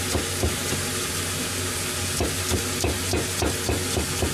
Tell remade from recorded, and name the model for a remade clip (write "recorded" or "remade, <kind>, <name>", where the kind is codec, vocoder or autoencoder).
recorded